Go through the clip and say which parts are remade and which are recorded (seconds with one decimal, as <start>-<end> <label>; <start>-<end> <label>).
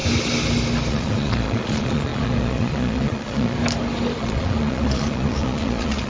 0.0-0.9 recorded; 0.9-3.6 remade; 3.6-4.2 recorded; 4.2-6.1 remade